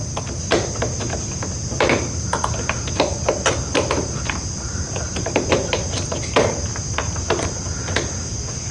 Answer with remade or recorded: recorded